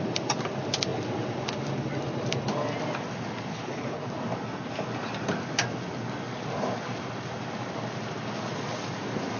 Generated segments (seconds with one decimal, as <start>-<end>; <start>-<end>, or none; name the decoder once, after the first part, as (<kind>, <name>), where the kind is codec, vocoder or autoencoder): 3.5-4.0 (codec, HILCodec)